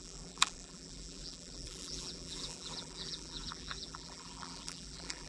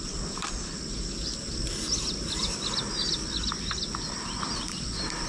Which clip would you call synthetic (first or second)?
first